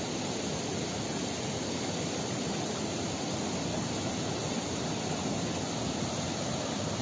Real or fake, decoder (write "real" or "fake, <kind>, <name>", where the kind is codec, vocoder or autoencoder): real